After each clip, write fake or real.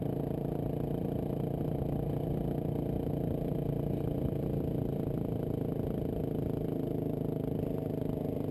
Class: real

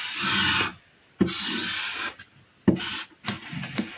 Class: real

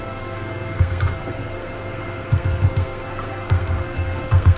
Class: fake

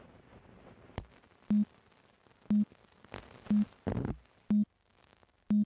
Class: real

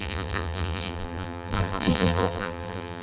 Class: fake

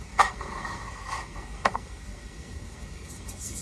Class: fake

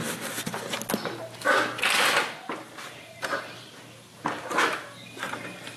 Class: real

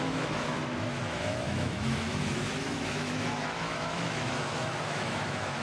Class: fake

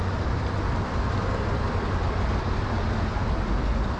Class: fake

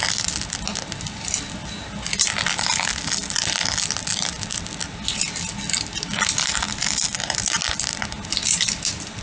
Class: real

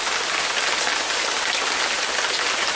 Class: real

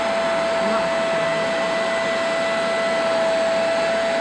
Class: real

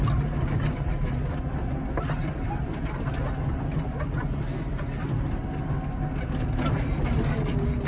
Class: real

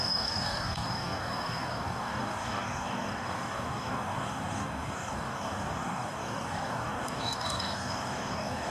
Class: fake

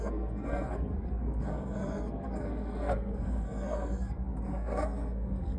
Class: fake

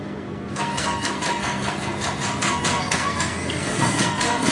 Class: fake